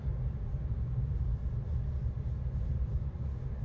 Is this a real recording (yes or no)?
yes